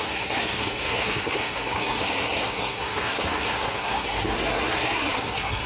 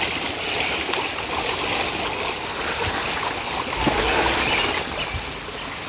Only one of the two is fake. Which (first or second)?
first